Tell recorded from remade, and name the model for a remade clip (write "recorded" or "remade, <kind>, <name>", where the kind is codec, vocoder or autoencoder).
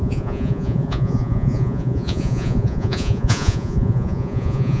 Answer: remade, vocoder, Vocos